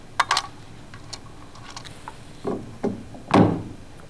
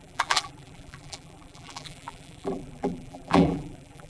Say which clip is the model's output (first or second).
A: second